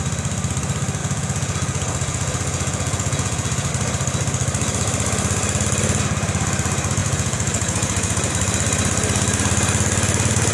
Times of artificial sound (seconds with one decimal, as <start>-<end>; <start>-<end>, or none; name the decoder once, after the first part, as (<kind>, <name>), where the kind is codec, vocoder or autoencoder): 1.0-3.7 (vocoder, Vocos); 7.0-8.3